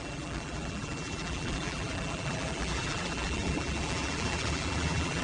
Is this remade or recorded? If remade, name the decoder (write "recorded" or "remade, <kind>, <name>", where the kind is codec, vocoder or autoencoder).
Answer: remade, vocoder, BigVGAN v2